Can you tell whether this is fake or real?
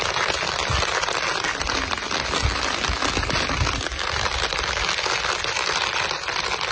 real